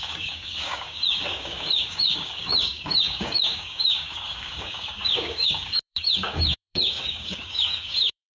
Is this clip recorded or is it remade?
remade